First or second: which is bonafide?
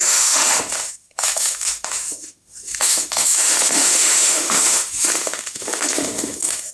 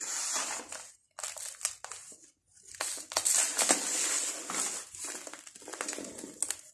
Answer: second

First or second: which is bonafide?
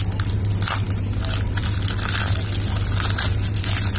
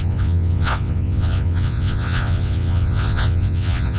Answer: first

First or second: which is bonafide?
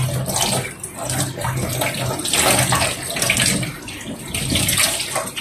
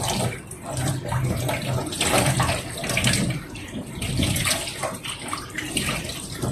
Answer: first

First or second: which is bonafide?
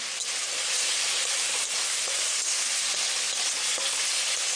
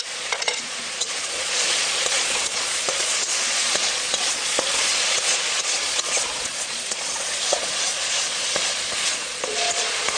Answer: first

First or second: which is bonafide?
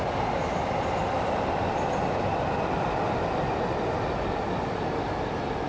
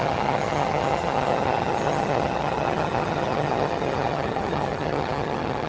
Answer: first